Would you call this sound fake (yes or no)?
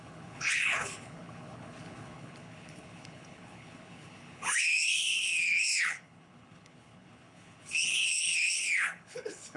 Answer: yes